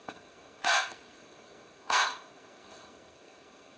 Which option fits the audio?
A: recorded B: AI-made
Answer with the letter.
B